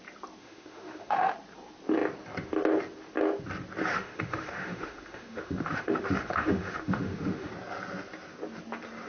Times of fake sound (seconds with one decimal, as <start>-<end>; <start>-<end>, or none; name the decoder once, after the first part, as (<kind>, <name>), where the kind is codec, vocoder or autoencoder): 0.4-1.3 (autoencoder, DAC-VAE); 3.9-7.5

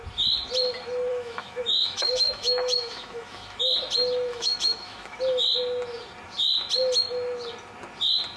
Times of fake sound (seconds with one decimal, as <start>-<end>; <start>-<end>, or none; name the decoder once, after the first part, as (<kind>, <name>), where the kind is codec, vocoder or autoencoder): 1.1-3.6 (autoencoder, DAC-VAE); 4.3-5.2

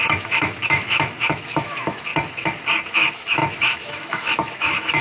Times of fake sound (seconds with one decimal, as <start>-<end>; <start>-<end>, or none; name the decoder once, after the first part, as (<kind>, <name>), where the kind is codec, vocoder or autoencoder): 0.0-2.1 (autoencoder, DAC-VAE); 2.9-5.0

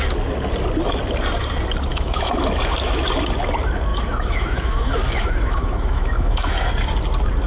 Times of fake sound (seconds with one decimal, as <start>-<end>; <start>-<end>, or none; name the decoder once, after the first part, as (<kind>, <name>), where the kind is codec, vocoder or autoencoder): 1.9-2.4 (autoencoder, DAC-VAE); 3.9-6.7

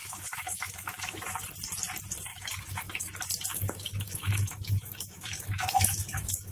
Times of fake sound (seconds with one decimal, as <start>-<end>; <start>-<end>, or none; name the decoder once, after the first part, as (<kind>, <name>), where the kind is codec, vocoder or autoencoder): 0.0-1.4 (autoencoder, DAC-VAE); 2.3-3.1; 3.5-6.5

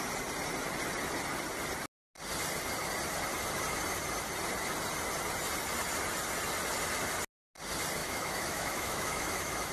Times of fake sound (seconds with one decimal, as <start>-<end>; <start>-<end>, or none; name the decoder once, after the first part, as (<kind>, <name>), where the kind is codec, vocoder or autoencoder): 8.0-9.7 (autoencoder, DAC-VAE)